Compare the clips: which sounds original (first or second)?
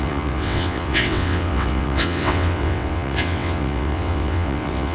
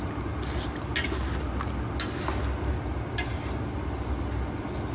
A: second